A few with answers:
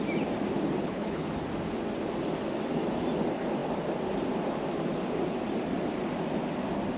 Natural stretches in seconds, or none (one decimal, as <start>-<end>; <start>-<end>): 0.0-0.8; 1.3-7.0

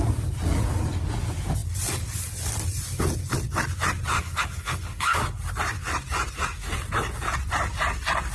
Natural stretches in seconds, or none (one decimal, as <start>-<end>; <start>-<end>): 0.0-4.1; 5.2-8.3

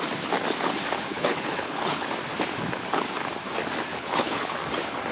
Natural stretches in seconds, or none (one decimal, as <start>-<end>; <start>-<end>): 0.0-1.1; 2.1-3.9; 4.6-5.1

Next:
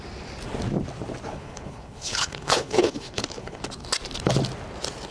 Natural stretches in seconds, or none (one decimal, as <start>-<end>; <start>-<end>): 0.0-1.3; 3.6-5.1

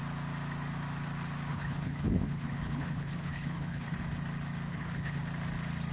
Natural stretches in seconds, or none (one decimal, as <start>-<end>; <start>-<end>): 0.0-1.5; 4.0-4.7; 5.2-5.9

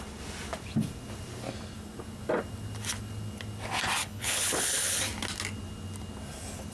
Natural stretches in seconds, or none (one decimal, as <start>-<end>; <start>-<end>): 0.0-4.0; 5.0-6.7